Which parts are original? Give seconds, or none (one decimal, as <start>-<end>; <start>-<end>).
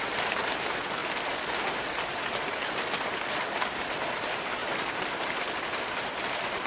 0.0-4.6; 5.2-6.7